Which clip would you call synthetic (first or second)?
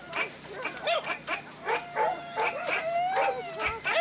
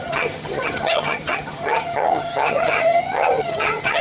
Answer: second